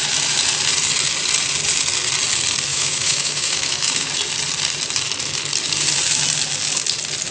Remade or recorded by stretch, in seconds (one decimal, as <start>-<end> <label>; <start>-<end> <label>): 0.0-2.7 recorded; 2.7-4.1 remade; 4.1-7.3 recorded